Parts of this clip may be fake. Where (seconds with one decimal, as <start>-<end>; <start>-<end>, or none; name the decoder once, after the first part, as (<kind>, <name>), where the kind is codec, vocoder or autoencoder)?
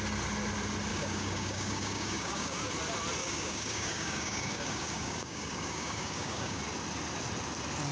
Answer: 0.9-2.7 (codec, DAC); 3.2-6.6